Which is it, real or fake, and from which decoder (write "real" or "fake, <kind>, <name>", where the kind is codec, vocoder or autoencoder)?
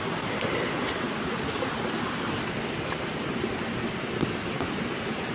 real